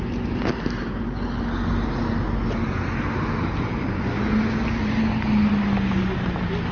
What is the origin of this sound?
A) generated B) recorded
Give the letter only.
B